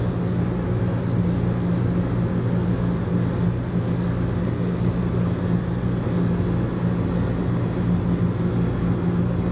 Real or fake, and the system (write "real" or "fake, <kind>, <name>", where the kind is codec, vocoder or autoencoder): real